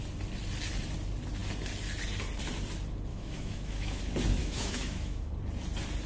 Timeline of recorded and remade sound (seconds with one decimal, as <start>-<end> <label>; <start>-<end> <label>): 0.0-3.1 recorded; 3.1-4.0 remade; 4.0-4.4 recorded; 4.4-5.3 remade; 5.3-6.1 recorded